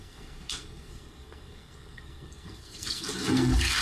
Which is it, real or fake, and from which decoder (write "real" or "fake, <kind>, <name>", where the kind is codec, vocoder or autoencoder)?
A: fake, codec, SNAC